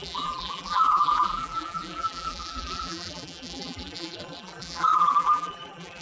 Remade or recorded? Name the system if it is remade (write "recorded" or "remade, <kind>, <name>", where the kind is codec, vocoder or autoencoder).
remade, vocoder, BigVGAN v2